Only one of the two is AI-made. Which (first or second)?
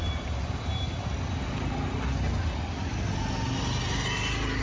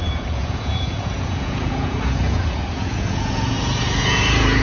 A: second